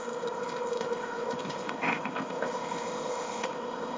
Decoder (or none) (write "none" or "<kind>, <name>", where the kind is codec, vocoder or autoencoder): codec, ZipCodec